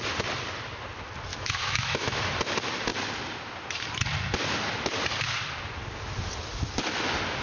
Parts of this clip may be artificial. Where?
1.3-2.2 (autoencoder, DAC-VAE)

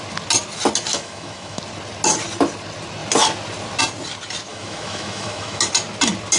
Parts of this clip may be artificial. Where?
0.9-1.6 (autoencoder, DAC-VAE); 4.5-5.6

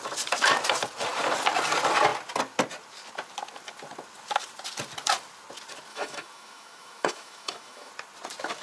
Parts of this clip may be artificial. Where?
5.9-7.9 (autoencoder, DAC-VAE)

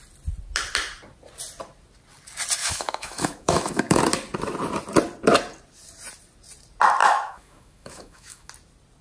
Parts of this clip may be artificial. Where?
2.6-4.0 (autoencoder, DAC-VAE); 7.0-8.5

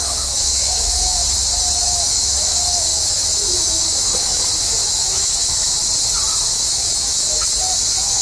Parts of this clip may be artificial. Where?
0.0-1.2 (autoencoder, DAC-VAE); 1.8-5.8; 6.3-8.2

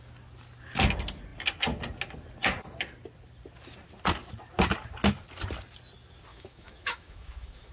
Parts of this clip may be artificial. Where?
6.3-7.7 (autoencoder, DAC-VAE)

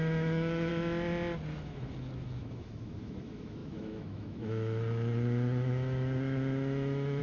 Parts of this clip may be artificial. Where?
0.0-0.7 (autoencoder, DAC-VAE); 1.6-7.2

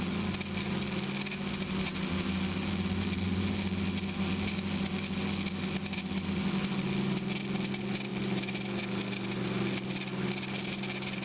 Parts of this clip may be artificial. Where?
none